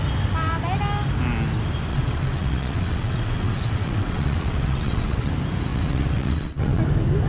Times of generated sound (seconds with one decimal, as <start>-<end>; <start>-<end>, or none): 1.9-5.3; 5.7-6.8